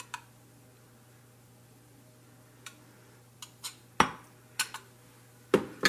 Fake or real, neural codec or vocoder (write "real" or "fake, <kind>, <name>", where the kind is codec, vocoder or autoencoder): real